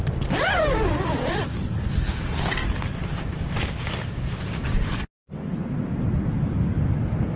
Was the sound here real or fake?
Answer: real